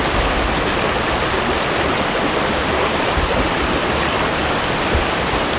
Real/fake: real